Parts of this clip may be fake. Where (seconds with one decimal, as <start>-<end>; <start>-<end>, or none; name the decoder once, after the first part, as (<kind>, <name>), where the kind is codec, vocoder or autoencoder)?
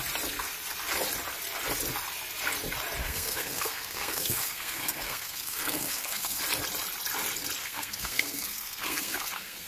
3.0-6.4 (codec, SNAC); 7.6-9.7